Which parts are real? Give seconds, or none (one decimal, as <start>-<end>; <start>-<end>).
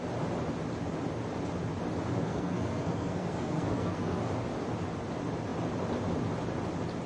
0.0-2.1; 4.3-7.1